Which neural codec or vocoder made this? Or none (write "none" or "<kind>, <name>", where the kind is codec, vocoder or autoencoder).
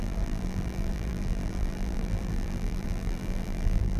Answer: vocoder, BigVGAN v2